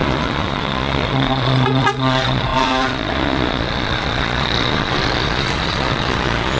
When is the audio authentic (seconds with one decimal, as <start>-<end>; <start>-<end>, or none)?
none